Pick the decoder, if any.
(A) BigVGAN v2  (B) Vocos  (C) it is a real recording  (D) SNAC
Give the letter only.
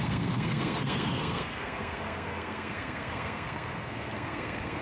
D